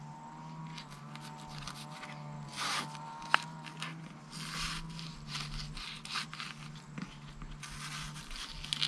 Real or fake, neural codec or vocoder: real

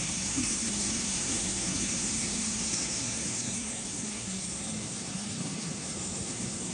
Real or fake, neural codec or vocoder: fake, codec, SNAC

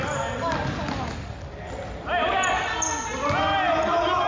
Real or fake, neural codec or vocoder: real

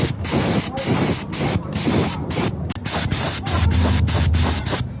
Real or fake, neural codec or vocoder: real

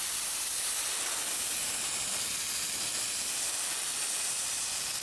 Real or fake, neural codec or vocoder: real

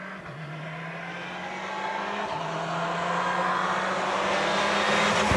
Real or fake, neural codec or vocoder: real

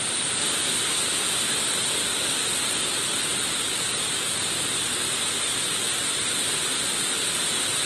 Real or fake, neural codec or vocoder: real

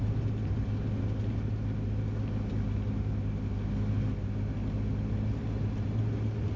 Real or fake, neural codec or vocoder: real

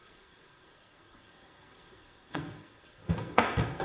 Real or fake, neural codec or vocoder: fake, codec, SNAC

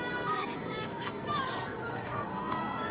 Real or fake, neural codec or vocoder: fake, codec, SNAC